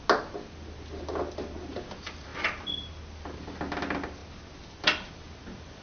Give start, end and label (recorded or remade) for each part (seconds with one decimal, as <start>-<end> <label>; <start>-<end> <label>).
0.0-5.8 recorded